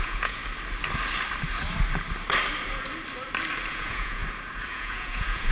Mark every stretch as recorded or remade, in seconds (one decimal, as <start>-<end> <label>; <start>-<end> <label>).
0.0-0.4 remade; 0.4-3.7 recorded; 3.7-4.2 remade; 4.2-4.7 recorded; 4.7-5.5 remade